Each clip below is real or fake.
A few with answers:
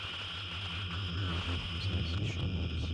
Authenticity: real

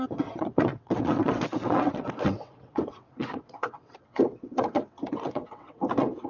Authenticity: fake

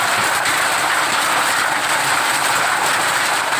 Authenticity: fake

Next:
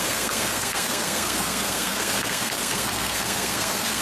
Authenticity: fake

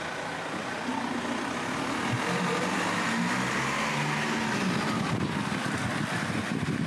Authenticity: real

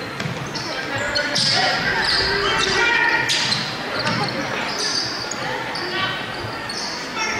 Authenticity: real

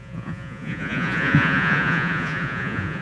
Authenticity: fake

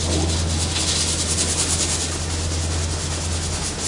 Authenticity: real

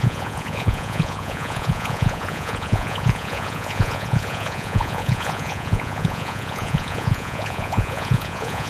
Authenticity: fake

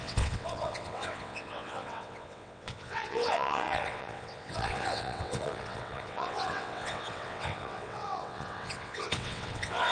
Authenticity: fake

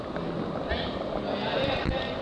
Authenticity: real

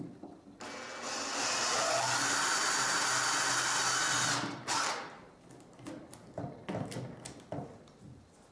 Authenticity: real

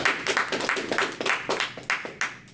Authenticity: real